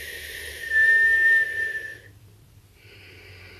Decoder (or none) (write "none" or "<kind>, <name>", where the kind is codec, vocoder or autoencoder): none